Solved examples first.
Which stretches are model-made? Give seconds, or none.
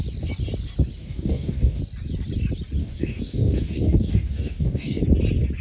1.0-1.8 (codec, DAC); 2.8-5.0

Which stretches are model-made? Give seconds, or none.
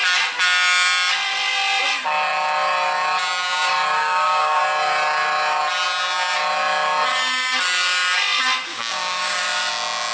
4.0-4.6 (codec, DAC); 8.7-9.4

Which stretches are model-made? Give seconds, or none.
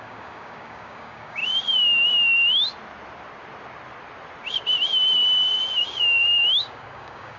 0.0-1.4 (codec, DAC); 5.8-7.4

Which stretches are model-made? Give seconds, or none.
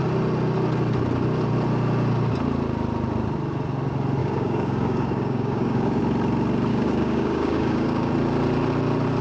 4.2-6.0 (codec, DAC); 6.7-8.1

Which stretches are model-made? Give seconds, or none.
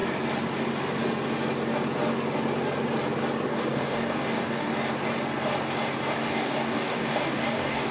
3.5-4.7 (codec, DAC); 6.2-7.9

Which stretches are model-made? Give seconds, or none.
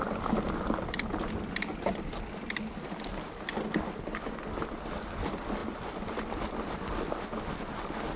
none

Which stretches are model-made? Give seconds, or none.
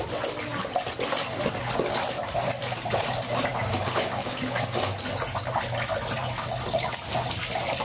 3.5-4.8 (codec, DAC)